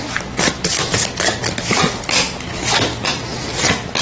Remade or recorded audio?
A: recorded